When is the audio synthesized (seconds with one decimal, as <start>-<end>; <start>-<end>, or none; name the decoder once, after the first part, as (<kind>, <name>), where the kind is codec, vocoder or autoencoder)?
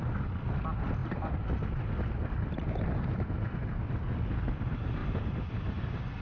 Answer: none